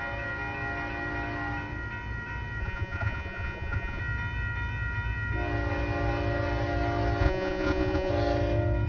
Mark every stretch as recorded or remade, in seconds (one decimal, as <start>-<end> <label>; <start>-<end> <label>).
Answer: 0.0-2.6 recorded; 2.6-4.0 remade; 4.0-7.2 recorded; 7.2-8.1 remade; 8.1-8.9 recorded